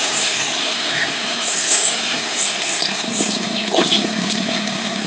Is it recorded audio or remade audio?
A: remade